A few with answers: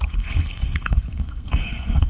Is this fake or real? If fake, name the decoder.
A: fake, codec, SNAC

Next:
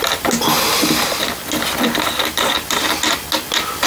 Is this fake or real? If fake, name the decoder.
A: real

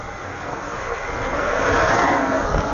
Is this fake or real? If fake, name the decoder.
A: fake, codec, SNAC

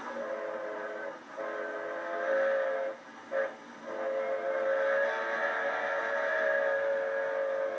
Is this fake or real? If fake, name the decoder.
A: real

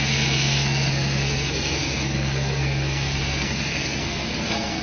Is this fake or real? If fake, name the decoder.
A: fake, codec, SNAC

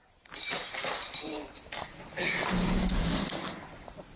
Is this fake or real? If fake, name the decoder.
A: real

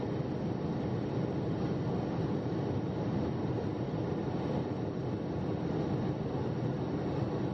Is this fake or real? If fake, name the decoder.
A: real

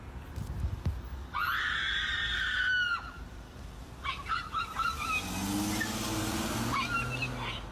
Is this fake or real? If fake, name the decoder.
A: real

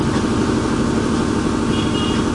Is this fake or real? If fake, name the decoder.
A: real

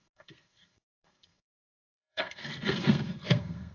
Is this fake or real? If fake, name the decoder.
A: fake, codec, SNAC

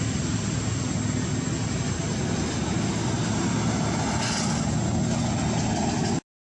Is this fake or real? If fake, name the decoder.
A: real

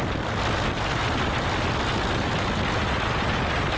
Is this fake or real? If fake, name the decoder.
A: real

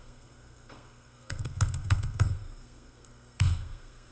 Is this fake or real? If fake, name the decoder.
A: fake, codec, SNAC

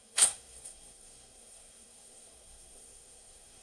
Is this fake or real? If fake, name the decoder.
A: fake, codec, SNAC